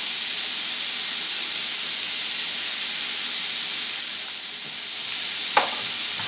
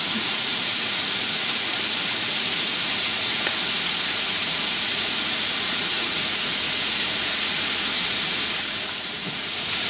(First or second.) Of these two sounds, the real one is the first